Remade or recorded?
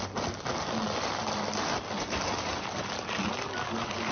recorded